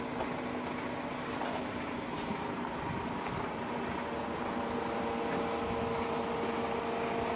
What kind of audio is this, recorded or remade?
recorded